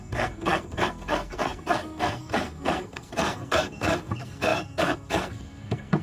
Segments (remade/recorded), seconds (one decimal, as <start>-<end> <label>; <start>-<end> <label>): 0.0-6.0 remade